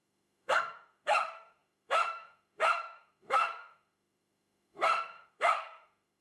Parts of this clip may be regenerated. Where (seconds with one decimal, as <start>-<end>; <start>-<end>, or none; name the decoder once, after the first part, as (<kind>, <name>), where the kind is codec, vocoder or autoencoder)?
0.0-6.2 (autoencoder, DAC-VAE)